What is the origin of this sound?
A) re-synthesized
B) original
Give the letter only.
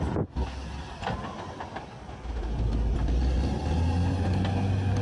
B